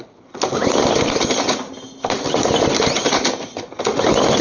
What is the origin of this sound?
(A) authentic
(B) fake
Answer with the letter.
A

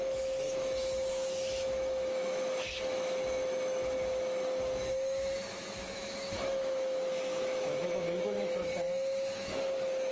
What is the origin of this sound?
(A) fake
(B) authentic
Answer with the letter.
A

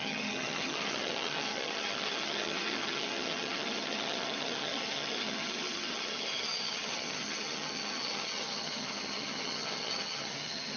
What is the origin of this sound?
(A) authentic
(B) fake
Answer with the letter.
B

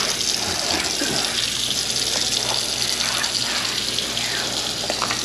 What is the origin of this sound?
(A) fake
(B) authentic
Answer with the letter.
B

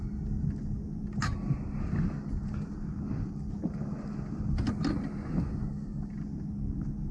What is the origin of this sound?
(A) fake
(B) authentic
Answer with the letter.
B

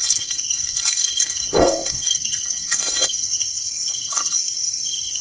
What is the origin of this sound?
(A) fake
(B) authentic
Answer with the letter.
A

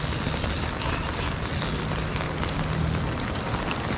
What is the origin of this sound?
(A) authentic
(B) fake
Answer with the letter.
A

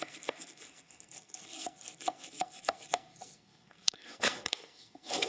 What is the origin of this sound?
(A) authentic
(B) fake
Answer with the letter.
B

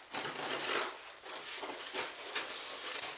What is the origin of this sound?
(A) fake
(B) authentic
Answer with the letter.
B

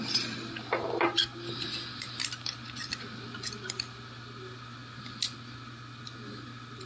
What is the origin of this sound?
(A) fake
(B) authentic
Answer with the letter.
B